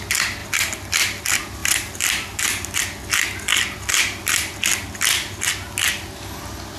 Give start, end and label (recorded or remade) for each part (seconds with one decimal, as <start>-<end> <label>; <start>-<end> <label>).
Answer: 0.0-0.4 recorded; 0.4-1.2 remade; 1.2-1.6 recorded; 1.6-2.8 remade; 2.8-6.8 recorded